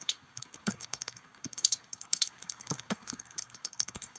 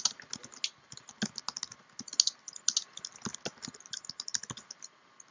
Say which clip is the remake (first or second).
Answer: first